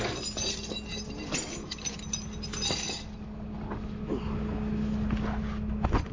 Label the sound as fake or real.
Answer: real